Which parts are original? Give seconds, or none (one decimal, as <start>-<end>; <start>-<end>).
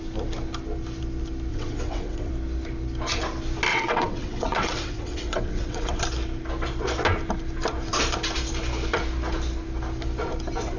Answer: 0.0-1.5; 2.3-3.7; 6.0-10.8